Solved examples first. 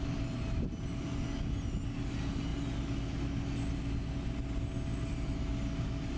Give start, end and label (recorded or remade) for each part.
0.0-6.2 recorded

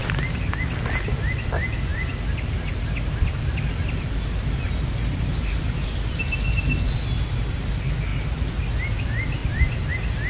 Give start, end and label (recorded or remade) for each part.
0.0-9.4 recorded; 9.4-9.9 remade; 9.9-10.3 recorded

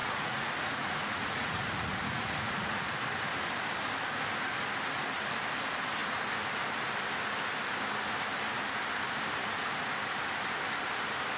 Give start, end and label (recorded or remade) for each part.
0.0-2.8 remade; 2.8-11.4 recorded

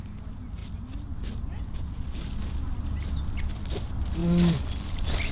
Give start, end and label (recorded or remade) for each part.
0.0-4.2 recorded; 4.2-5.3 remade

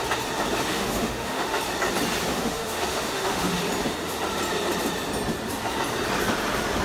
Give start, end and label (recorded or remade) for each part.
0.0-0.7 recorded; 0.7-1.6 remade; 1.6-2.3 recorded; 2.3-3.6 remade; 3.6-6.8 recorded